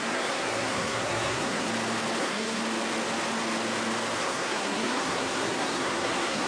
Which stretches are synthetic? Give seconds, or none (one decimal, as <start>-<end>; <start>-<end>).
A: 0.0-1.7; 2.2-2.6; 4.2-6.5